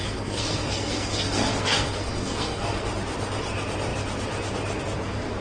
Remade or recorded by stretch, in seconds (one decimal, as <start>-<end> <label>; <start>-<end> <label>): 0.0-2.9 remade; 2.9-5.4 recorded